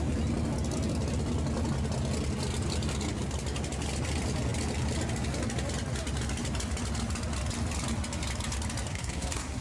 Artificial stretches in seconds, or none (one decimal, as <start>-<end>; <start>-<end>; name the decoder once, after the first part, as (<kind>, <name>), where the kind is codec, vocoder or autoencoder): 8.9-9.6 (codec, SNAC)